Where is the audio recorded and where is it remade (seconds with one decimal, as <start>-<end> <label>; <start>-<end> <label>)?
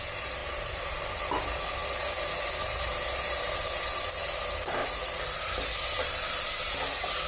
0.0-0.4 recorded; 0.4-1.2 remade; 1.2-4.8 recorded; 4.8-6.0 remade; 6.0-7.3 recorded